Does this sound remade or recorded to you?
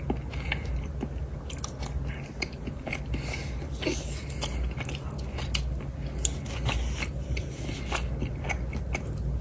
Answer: recorded